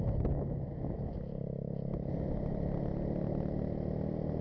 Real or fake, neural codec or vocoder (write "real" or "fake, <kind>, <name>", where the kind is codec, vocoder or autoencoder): real